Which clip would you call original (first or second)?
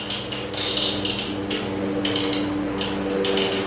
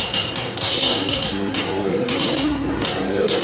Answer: first